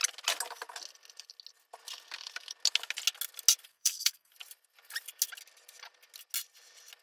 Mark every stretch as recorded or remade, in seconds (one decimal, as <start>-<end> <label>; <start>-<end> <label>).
0.0-3.7 recorded; 3.7-4.3 remade; 4.3-7.0 recorded